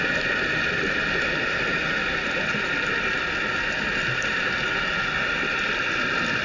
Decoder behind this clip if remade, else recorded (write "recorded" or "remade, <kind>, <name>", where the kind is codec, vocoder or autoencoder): recorded